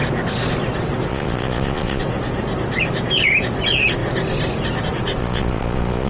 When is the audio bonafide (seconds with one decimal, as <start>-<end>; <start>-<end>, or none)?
0.0-1.1; 2.0-5.2